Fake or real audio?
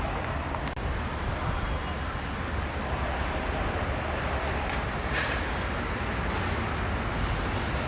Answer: real